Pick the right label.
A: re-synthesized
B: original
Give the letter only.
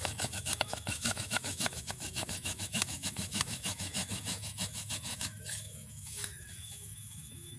A